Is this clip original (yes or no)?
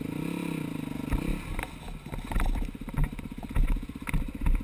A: yes